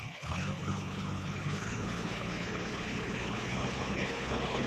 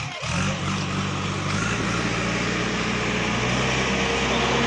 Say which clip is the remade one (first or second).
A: first